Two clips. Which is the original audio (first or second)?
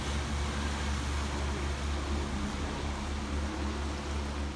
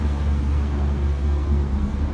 first